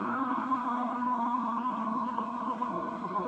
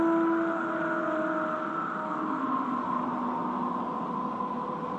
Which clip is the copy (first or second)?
first